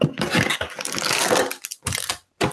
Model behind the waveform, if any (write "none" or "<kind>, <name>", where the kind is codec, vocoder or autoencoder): vocoder, BigVGAN v2